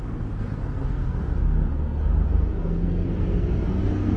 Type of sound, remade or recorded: remade